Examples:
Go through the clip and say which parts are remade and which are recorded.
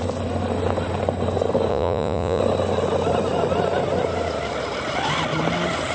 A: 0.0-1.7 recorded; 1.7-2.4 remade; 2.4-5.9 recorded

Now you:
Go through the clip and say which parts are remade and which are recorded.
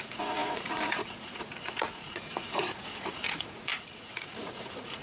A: 0.0-5.0 remade